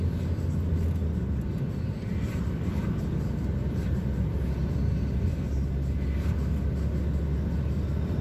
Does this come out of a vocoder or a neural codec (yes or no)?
no